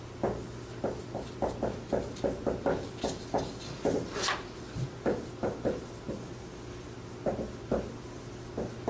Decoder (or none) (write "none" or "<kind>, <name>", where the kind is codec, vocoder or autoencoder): none